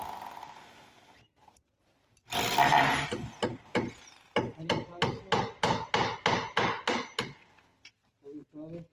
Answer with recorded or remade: recorded